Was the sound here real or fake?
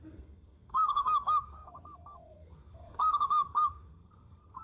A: fake